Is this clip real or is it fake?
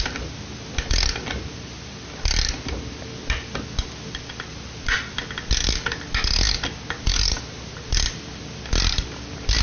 real